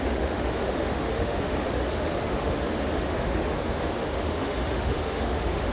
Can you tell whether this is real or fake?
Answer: fake